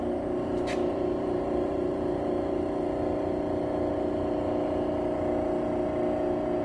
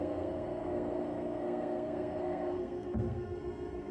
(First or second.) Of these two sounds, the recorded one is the first